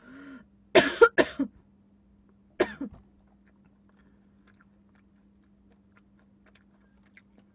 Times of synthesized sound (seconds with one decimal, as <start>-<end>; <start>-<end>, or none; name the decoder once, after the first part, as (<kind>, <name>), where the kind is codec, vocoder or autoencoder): none